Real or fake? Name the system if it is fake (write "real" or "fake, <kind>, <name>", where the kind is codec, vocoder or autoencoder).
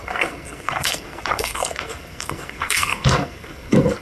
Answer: fake, codec, SNAC